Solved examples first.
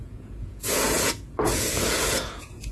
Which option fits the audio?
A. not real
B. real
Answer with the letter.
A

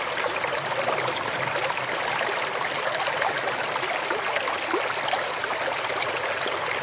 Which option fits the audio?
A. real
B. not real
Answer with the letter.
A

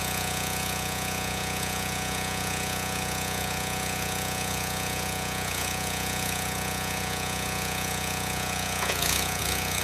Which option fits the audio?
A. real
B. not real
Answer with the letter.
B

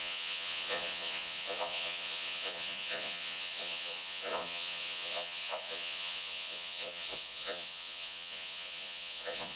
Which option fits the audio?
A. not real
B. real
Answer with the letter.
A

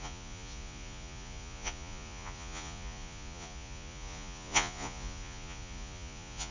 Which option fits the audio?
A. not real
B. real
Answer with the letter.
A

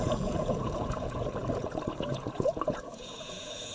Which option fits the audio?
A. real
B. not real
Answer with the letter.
B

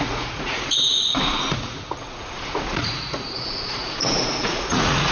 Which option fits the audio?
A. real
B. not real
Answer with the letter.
B